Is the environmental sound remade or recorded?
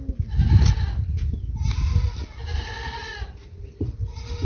recorded